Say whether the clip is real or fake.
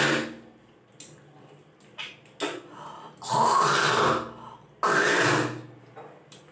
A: real